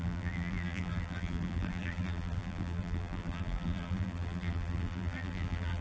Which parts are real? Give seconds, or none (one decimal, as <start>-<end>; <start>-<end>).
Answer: none